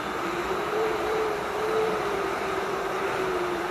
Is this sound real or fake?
fake